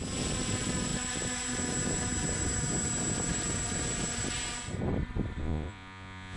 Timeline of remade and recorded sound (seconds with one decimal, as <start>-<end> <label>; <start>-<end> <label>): 0.0-5.4 recorded; 5.4-6.4 remade